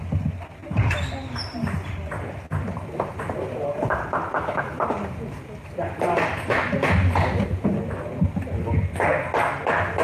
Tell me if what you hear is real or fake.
real